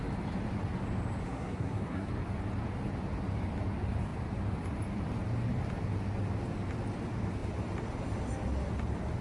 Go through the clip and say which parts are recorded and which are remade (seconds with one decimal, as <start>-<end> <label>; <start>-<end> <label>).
0.0-1.2 recorded; 1.2-2.1 remade; 2.1-9.2 recorded